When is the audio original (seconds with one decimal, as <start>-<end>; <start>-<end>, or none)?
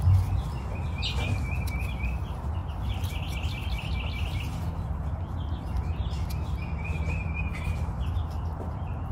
0.0-9.1